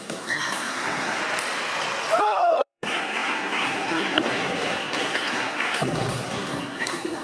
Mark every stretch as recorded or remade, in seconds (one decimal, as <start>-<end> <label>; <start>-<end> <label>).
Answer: 0.0-1.2 remade; 1.2-2.2 recorded; 2.2-7.2 remade